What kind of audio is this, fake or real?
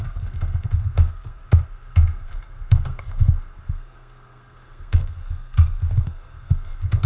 fake